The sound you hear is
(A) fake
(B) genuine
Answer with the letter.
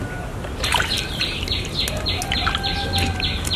B